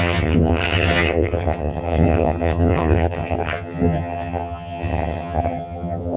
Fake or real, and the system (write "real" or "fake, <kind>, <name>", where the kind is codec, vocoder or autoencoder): fake, vocoder, HiFi-GAN